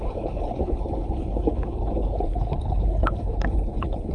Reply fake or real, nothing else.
fake